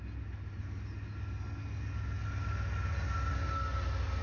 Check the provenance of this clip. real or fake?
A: real